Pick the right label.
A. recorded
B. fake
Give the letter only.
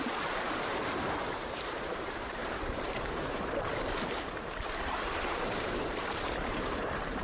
B